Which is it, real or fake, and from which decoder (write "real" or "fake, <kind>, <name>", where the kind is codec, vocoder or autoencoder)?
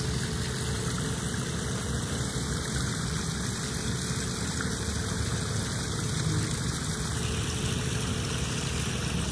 real